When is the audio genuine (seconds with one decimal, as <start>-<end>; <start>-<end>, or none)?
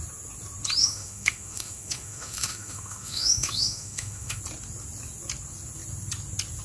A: 0.0-0.8; 4.4-6.6